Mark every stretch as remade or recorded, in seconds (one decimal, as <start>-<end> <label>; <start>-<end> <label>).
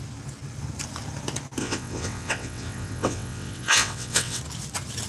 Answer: 0.0-1.6 recorded; 1.6-4.4 remade; 4.4-5.1 recorded